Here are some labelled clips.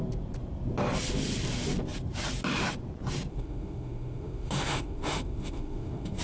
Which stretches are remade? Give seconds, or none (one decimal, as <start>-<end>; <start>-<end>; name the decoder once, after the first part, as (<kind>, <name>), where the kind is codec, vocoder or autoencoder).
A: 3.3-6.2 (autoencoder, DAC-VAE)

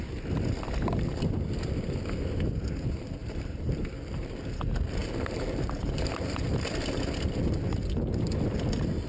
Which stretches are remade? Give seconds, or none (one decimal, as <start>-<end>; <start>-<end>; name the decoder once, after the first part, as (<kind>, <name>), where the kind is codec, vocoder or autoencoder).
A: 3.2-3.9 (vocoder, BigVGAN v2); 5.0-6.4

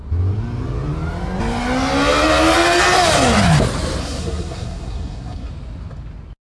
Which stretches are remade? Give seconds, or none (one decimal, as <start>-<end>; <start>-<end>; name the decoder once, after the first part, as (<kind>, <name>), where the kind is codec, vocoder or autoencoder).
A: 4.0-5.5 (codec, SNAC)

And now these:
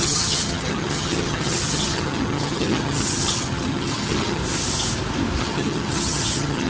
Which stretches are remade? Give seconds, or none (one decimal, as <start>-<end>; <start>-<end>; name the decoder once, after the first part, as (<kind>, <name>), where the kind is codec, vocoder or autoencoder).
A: 0.0-4.4 (vocoder, HiFi-GAN); 5.4-6.7